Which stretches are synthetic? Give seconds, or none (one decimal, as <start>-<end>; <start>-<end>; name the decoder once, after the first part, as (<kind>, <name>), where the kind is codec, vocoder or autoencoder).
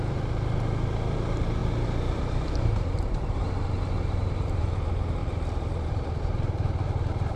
0.0-5.2 (vocoder, BigVGAN v2); 6.2-7.4